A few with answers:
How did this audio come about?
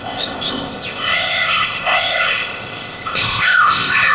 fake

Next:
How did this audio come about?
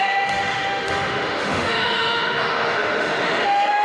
fake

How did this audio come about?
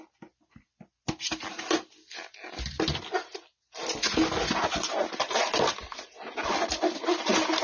real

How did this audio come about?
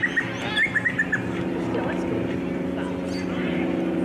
real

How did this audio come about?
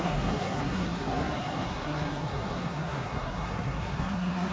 fake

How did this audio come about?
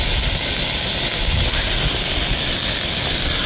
real